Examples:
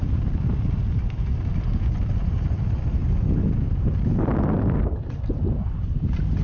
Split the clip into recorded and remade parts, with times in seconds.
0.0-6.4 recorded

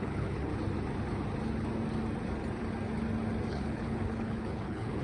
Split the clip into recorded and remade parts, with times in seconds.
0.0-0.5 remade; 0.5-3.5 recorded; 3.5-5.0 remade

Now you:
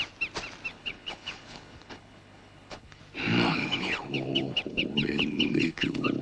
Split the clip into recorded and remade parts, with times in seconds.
0.0-0.7 recorded; 0.7-3.0 remade; 3.0-3.5 recorded; 3.5-6.2 remade